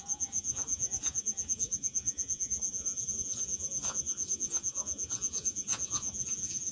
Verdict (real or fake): fake